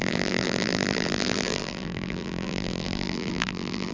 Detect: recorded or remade remade